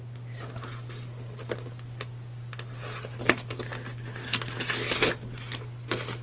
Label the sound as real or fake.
real